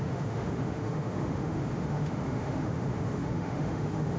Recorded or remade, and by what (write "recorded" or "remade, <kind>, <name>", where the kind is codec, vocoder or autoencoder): remade, autoencoder, DAC-VAE